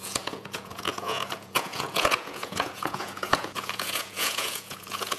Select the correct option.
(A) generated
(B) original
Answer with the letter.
A